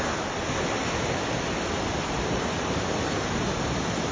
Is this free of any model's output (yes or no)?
yes